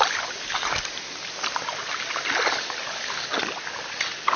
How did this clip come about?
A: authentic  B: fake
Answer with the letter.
A